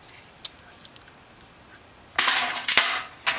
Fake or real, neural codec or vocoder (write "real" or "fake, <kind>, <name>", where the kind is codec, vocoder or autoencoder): real